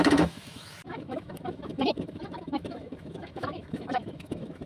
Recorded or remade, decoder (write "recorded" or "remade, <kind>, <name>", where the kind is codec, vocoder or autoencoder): remade, autoencoder, DAC-VAE